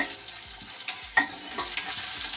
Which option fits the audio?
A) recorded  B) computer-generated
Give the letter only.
A